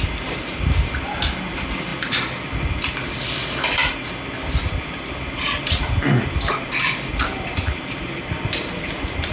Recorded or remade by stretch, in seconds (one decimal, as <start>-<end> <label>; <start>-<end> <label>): 0.0-9.3 remade